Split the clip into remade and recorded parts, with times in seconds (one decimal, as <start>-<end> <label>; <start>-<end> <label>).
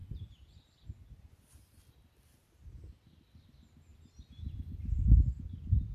0.0-3.9 recorded; 3.9-4.6 remade; 4.6-5.9 recorded